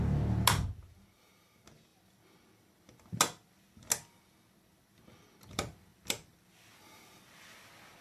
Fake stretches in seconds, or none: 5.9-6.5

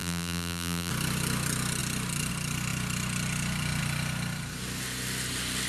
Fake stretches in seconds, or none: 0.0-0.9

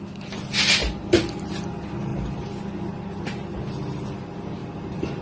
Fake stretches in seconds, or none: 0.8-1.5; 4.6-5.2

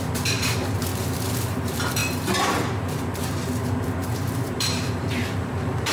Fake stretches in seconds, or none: 0.0-0.9; 1.6-2.0; 3.3-5.9